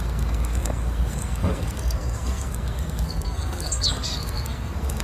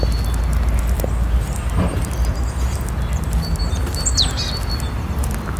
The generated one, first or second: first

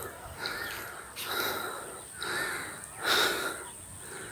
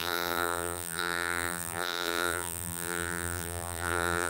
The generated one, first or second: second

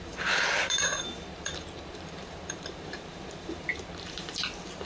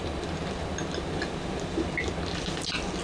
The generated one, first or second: first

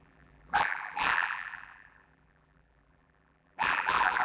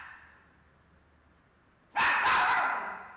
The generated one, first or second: first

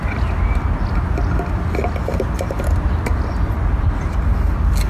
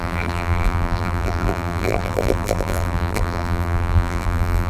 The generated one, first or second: second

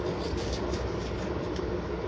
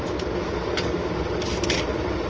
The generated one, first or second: first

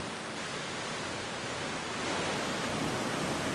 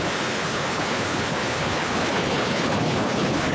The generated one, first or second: second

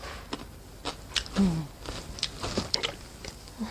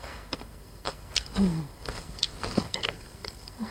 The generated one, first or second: second